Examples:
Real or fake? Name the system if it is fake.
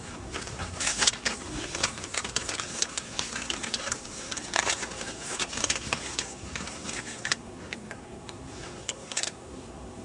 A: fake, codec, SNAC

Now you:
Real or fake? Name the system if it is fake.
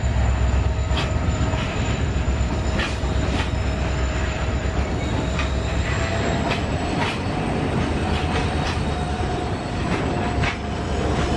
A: fake, vocoder, BigVGAN v2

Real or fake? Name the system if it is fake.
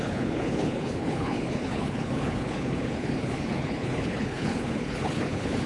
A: fake, codec, HILCodec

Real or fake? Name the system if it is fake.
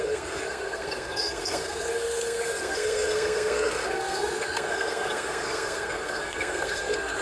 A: fake, codec, SNAC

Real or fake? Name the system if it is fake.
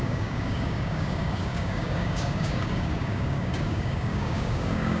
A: fake, codec, DAC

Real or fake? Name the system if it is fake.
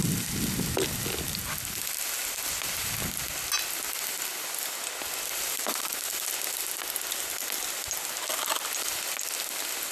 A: real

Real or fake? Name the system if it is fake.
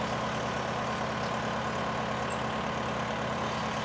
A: real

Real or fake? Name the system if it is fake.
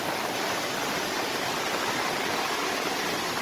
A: real